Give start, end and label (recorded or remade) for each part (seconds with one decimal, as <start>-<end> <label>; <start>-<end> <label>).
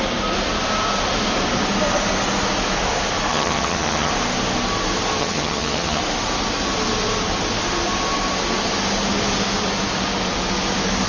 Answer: 0.0-3.3 recorded; 3.3-4.1 remade; 4.1-5.2 recorded; 5.2-6.0 remade; 6.0-11.1 recorded